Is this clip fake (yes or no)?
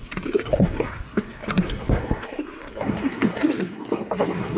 yes